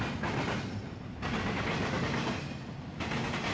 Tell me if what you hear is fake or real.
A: real